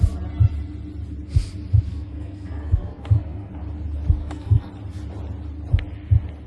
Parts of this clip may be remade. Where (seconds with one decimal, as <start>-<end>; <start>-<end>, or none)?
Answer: 1.9-3.5; 4.2-4.7